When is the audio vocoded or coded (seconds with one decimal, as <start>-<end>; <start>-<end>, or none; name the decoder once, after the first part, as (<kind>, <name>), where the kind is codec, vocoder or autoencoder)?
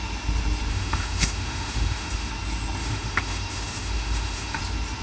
0.7-2.3 (autoencoder, DAC-VAE); 2.8-4.6